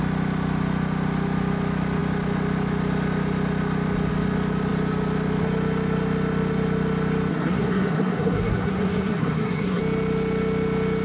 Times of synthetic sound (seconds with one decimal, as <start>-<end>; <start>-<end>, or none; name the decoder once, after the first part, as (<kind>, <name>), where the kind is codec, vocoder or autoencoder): 7.3-9.8 (codec, SNAC)